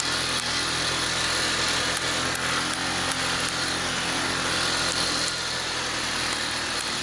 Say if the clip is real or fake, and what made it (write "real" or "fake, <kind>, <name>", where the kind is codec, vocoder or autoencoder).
real